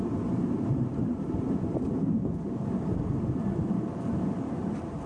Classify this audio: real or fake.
fake